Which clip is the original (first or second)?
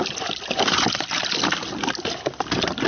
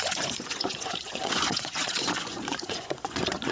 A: first